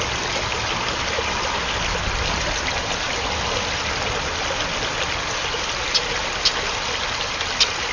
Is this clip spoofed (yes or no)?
no